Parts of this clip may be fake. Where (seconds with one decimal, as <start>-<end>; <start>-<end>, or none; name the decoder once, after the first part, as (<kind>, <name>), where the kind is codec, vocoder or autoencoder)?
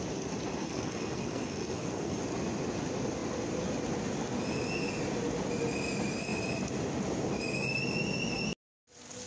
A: 0.6-2.2 (codec, SNAC)